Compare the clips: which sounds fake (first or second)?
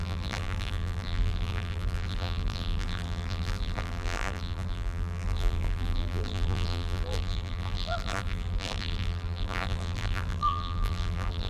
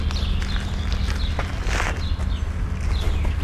first